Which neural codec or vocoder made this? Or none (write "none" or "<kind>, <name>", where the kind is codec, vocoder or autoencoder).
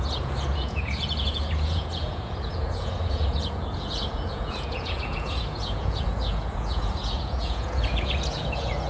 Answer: vocoder, Vocos